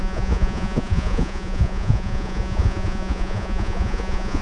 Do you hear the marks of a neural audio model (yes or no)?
yes